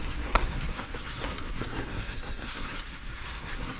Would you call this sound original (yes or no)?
no